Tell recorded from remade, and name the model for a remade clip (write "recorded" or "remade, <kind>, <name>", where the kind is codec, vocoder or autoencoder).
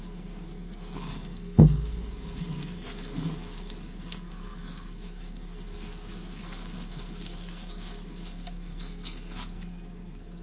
remade, codec, SNAC